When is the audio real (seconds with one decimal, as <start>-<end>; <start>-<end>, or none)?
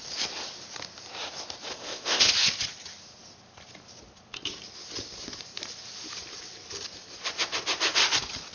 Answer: 0.0-1.7; 2.3-8.5